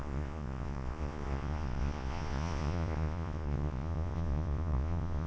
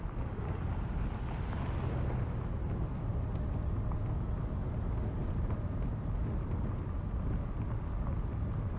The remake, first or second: first